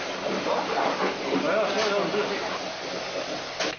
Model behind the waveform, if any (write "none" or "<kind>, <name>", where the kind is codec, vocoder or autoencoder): none